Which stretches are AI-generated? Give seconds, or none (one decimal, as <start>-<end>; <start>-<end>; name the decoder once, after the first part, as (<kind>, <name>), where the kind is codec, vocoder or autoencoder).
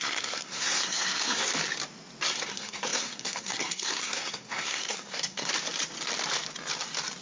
0.0-1.5 (codec, SNAC); 2.5-5.5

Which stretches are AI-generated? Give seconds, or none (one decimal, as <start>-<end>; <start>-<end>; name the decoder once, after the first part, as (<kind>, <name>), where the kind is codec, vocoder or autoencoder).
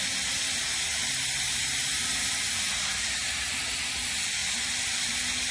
none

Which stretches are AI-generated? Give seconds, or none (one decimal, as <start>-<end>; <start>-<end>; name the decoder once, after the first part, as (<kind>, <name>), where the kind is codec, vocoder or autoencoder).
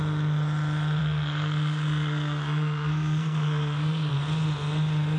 1.0-4.1 (codec, SNAC)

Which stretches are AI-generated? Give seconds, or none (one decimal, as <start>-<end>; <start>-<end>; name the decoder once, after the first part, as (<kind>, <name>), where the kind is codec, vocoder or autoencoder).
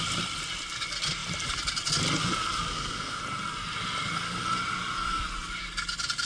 2.7-3.2 (codec, SNAC)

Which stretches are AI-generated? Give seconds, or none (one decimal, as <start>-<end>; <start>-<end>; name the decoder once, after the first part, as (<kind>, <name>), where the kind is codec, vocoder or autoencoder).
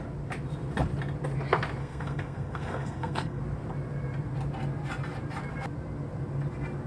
1.8-3.4 (codec, SNAC)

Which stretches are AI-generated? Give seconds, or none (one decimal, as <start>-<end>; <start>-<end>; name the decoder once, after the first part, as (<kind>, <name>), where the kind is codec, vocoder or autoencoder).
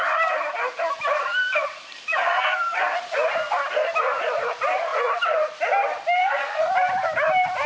6.2-6.7 (codec, SNAC)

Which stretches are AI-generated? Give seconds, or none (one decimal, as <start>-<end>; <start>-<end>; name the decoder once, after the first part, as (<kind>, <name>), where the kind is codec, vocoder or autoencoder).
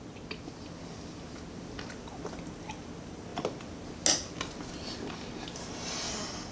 none